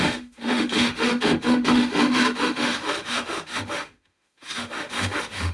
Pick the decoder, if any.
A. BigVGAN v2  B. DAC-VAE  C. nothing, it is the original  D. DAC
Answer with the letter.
B